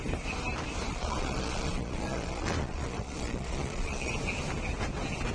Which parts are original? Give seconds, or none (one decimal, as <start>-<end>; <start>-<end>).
0.0-0.9; 4.1-5.3